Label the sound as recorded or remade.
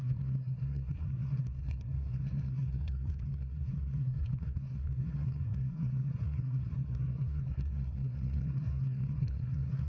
remade